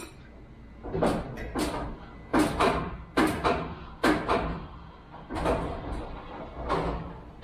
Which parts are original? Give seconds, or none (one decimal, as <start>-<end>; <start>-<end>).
0.0-2.3; 6.7-7.4